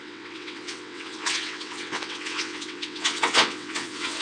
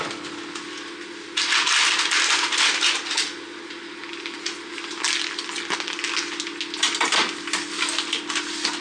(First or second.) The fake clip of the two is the first